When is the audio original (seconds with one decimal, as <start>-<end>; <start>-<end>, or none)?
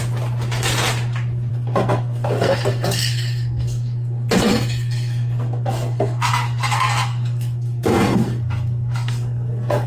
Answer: 0.0-1.5